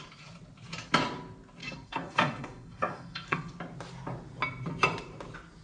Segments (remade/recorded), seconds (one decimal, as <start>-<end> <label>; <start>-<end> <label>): 0.0-1.6 recorded; 1.6-3.5 remade; 3.5-5.6 recorded